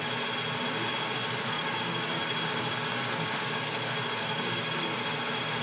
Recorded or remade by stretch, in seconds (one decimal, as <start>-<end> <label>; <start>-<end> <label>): 0.0-1.2 recorded; 1.2-4.6 remade; 4.6-5.6 recorded